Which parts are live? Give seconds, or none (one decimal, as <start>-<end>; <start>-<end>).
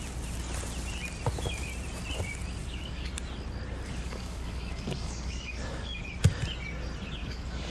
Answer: 0.0-2.6; 3.1-3.9; 6.0-7.2